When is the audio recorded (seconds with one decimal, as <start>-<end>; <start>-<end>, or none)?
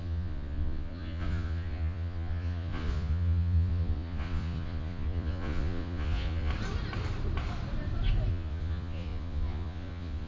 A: 6.5-8.3